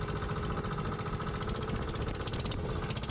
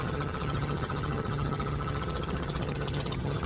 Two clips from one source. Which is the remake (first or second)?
second